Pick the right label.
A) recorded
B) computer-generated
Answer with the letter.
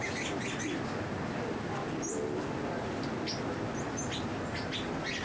A